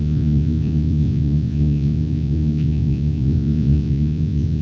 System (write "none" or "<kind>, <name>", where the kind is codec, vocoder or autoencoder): vocoder, Vocos